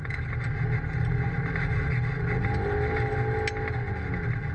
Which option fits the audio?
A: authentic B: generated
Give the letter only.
A